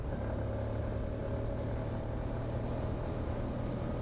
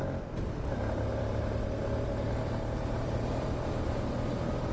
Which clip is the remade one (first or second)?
second